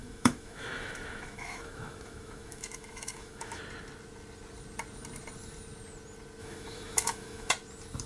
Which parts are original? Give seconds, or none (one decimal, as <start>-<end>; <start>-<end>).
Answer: 3.6-6.4; 7.5-8.1